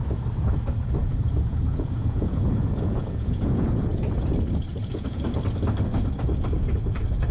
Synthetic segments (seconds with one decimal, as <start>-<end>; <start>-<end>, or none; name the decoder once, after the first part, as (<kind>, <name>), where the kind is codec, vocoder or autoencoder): 1.0-4.0 (vocoder, Vocos); 4.7-5.2